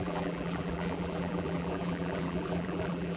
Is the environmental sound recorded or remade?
remade